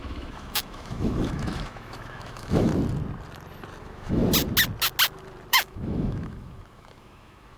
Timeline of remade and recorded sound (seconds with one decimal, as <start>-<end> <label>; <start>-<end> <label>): 0.0-2.7 remade; 2.7-3.8 recorded; 3.8-4.2 remade; 4.2-5.5 recorded; 5.5-7.6 remade